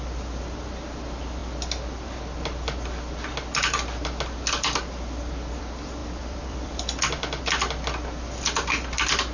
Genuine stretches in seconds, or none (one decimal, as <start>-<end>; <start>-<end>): 0.0-6.0; 7.4-9.3

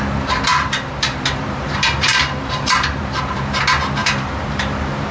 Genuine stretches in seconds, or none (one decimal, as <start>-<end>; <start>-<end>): 0.0-0.5; 3.6-4.0

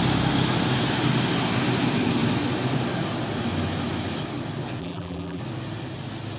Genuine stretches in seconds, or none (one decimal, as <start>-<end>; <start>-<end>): 0.0-4.8; 5.4-6.4

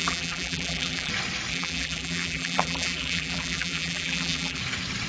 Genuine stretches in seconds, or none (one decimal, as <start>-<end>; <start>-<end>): 1.1-1.5; 4.6-5.1

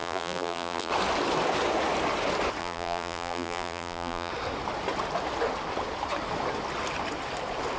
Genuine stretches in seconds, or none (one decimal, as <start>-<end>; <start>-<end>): 0.9-2.6; 4.3-7.8

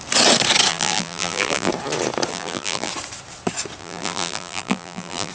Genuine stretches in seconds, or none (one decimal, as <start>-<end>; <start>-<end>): 0.0-0.7; 1.7-2.3; 2.9-3.8

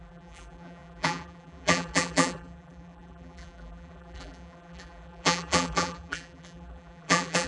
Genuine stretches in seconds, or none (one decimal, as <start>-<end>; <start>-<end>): none